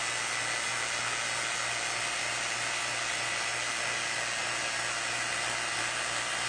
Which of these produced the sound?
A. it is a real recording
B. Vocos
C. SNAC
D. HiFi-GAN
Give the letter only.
A